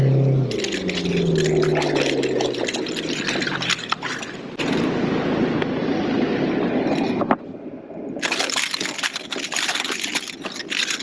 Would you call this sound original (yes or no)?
yes